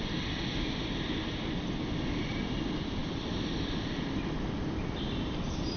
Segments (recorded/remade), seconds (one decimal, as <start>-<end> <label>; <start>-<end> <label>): 0.0-5.8 remade